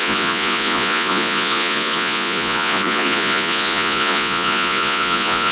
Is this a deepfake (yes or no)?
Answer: yes